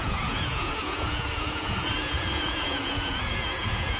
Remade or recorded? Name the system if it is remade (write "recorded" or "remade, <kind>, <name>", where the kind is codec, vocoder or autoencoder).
remade, vocoder, Vocos